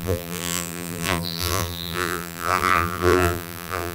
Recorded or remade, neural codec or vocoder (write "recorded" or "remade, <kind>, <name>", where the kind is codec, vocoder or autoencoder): remade, vocoder, BigVGAN v2